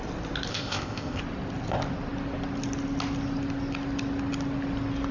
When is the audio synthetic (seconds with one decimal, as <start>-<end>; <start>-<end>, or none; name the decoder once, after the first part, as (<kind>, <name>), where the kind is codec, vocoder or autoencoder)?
0.5-1.2 (codec, ZipCodec)